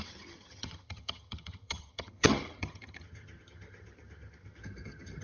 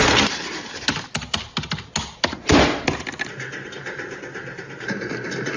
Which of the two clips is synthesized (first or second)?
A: first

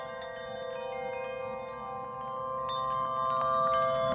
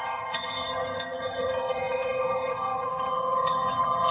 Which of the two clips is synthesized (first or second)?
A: second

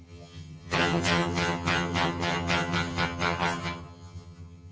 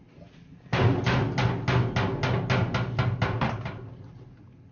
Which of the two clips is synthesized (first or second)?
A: first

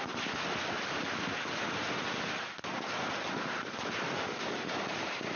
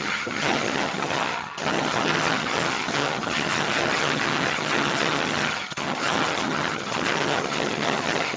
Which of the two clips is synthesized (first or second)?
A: second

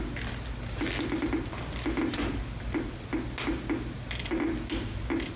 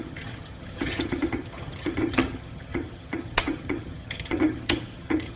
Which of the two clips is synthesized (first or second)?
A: second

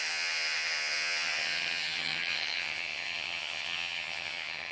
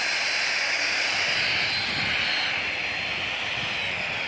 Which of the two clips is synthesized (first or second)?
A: first